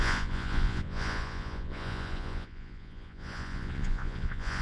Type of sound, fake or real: fake